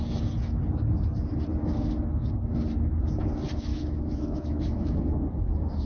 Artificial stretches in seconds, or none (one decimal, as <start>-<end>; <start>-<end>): 3.7-5.0